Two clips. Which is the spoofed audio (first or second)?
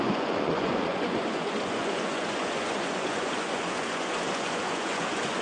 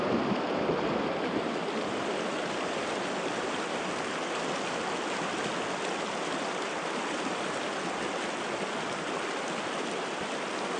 first